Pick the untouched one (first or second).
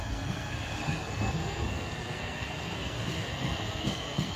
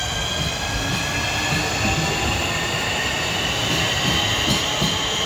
second